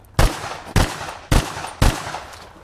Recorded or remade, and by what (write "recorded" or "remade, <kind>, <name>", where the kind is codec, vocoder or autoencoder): recorded